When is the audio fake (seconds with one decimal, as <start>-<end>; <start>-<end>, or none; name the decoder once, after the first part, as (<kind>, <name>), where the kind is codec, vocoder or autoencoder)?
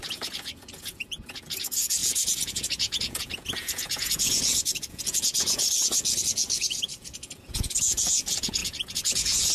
0.0-9.5 (vocoder, Vocos)